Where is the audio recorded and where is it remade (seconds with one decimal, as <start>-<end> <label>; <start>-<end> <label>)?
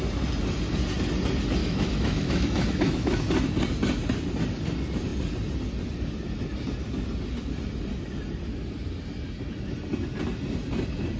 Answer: 0.0-1.6 recorded; 1.6-3.2 remade; 3.2-11.2 recorded